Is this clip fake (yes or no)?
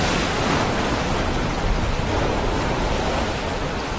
yes